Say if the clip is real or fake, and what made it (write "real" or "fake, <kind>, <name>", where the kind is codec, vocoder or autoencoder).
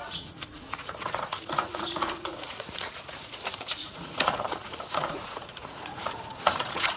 fake, vocoder, Vocos